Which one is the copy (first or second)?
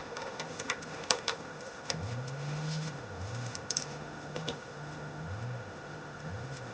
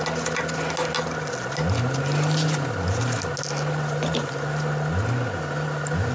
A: first